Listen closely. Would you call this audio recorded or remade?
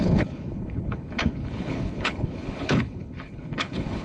remade